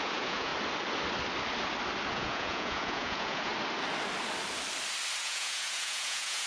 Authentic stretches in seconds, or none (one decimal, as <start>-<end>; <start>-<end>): 0.5-2.1; 3.5-5.2